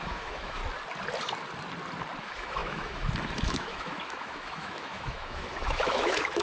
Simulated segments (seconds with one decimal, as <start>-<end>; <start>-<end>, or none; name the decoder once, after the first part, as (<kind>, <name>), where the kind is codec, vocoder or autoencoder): 0.0-0.6 (autoencoder, DAC-VAE); 2.2-6.4